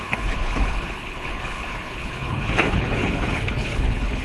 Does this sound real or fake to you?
fake